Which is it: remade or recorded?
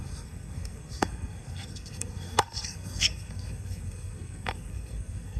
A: remade